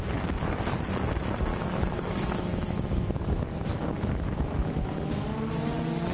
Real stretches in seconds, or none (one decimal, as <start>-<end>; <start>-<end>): 0.0-1.5; 5.1-6.1